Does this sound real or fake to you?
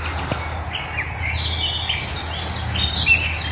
real